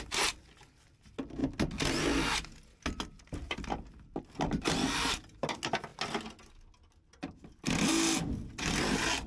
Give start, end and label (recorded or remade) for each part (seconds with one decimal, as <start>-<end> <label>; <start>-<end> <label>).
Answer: 0.0-9.3 recorded